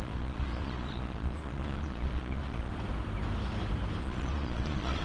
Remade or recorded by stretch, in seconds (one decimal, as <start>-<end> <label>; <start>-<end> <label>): 0.0-2.7 remade; 2.7-4.0 recorded; 4.0-5.0 remade